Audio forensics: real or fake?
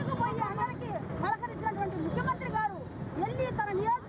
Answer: fake